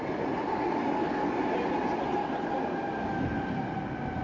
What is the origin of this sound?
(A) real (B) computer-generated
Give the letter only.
A